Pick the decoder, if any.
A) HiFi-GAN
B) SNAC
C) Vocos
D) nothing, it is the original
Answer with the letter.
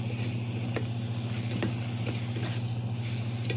D